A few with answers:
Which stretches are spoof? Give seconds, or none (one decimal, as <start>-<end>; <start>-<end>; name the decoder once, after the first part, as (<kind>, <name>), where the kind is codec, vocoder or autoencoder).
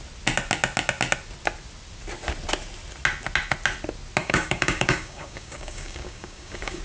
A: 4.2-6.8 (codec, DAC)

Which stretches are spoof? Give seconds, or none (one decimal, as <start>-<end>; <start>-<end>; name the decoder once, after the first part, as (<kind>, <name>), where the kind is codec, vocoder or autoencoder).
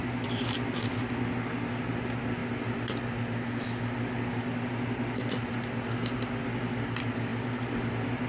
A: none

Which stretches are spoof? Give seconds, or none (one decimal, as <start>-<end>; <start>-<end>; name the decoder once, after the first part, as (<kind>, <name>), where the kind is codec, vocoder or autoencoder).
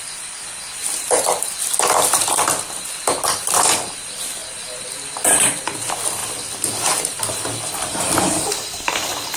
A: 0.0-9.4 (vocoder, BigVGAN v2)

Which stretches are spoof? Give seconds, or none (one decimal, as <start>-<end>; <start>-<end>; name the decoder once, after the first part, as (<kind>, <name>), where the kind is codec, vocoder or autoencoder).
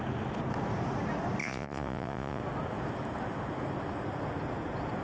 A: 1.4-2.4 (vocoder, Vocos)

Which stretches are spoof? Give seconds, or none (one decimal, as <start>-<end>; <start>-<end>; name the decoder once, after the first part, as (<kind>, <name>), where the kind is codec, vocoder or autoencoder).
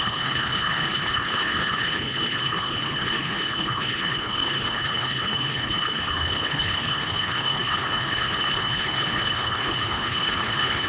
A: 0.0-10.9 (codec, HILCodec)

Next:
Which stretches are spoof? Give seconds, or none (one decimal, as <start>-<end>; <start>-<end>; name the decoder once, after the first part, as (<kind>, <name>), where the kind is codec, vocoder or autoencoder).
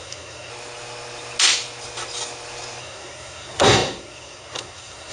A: 0.0-0.5 (codec, SNAC); 2.8-5.1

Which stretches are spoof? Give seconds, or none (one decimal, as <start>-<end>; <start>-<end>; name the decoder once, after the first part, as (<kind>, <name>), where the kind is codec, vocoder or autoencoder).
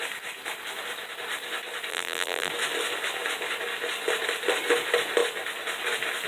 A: 1.9-2.5 (vocoder, BigVGAN v2)